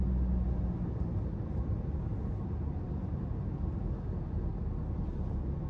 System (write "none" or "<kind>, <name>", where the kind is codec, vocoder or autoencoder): none